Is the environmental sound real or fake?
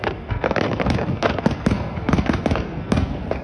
fake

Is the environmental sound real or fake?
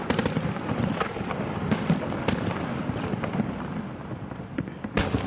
real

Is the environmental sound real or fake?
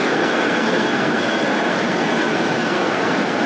fake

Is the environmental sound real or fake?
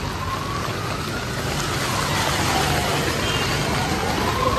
real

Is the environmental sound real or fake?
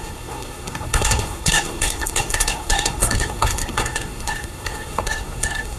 fake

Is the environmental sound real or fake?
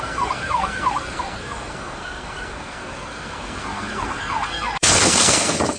fake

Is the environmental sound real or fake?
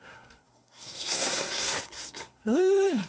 fake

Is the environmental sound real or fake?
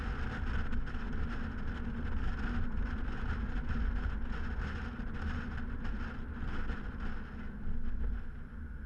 real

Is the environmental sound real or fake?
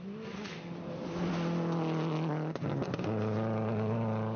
real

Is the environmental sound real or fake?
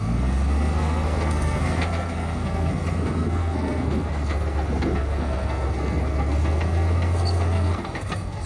fake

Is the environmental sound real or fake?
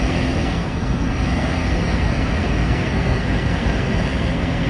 fake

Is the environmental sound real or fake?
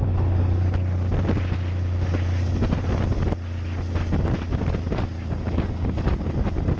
real